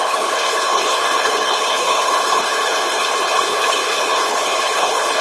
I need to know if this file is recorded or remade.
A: remade